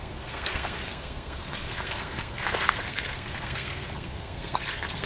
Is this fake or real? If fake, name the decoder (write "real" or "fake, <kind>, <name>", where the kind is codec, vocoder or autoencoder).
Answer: fake, codec, SNAC